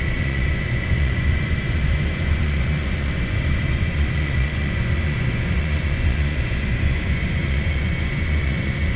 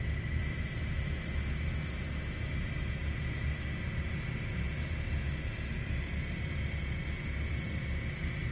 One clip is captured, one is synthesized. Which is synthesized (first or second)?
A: first